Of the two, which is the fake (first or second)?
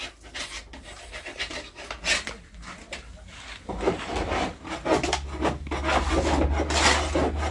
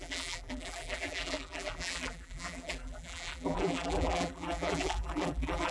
second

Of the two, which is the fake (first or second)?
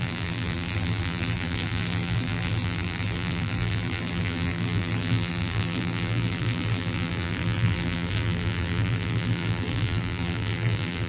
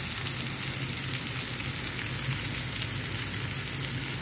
first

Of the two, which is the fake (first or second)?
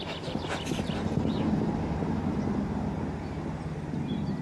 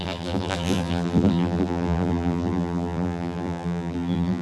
second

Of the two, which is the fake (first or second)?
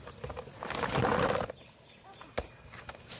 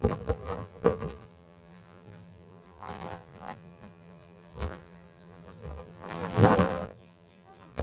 second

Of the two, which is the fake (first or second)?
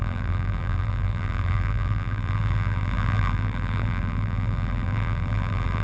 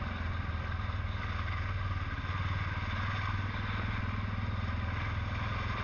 first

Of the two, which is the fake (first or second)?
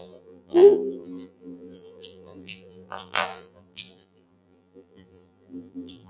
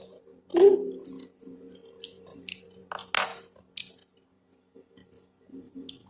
first